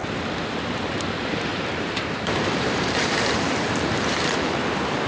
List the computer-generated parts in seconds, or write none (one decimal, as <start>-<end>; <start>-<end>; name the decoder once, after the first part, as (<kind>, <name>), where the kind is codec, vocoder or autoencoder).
1.5-4.6 (vocoder, BigVGAN v2)